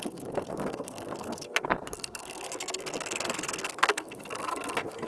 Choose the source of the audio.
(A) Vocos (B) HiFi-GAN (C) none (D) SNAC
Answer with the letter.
D